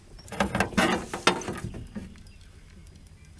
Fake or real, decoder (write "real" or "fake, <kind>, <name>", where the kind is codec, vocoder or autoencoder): real